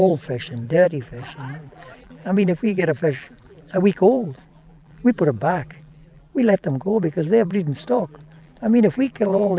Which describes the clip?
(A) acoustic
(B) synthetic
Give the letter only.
B